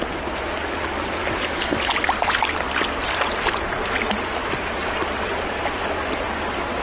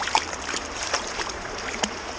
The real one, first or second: first